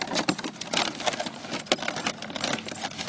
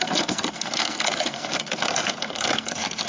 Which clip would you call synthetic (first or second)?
second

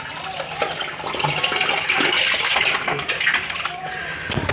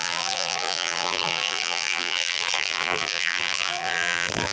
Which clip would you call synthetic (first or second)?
second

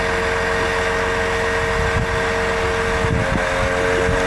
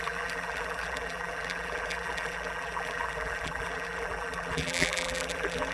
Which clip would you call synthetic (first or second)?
second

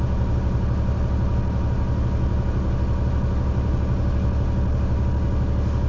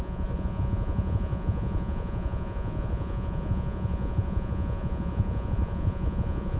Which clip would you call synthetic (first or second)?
second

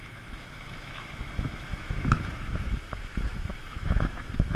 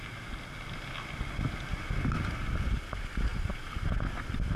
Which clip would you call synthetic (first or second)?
first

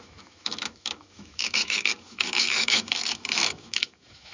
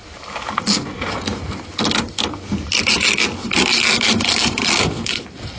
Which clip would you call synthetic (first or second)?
first